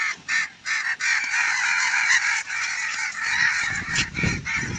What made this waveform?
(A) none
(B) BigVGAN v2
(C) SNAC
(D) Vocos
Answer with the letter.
B